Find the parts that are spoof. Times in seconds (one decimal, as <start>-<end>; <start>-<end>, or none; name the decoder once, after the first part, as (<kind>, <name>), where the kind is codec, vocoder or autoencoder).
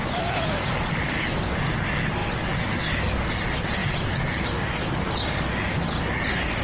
none